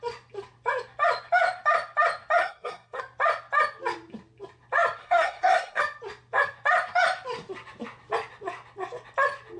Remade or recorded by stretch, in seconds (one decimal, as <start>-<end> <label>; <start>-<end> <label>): 0.0-2.4 recorded; 2.4-3.0 remade; 3.0-5.0 recorded; 5.0-5.8 remade; 5.8-9.6 recorded